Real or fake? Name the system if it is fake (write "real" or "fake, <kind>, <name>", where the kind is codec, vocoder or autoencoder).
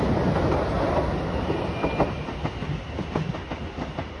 real